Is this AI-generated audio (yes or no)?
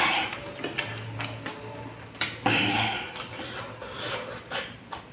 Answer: no